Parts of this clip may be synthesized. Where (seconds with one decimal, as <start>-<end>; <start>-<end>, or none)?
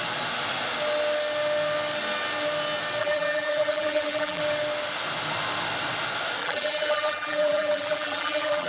3.0-4.4; 6.4-8.7